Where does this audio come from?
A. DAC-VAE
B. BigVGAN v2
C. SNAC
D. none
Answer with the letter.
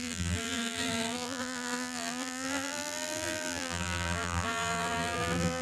B